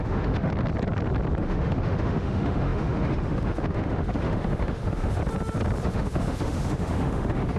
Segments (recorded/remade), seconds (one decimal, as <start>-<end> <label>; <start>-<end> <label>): 0.0-0.5 remade; 0.5-1.4 recorded; 1.4-5.2 remade; 5.2-5.8 recorded; 5.8-7.6 remade